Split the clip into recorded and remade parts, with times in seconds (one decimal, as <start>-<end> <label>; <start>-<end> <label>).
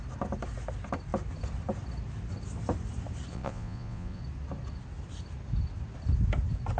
0.0-3.3 recorded; 3.3-4.2 remade; 4.2-6.8 recorded